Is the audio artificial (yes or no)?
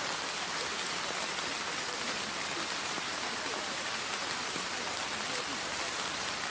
no